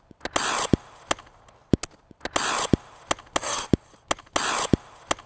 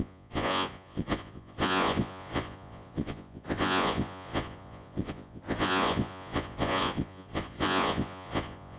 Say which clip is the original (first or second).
first